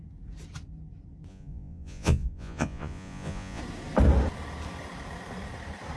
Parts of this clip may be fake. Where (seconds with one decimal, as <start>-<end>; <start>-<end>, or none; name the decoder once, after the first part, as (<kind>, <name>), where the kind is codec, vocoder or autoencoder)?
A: 1.3-3.6 (vocoder, Vocos)